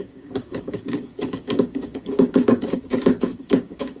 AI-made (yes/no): yes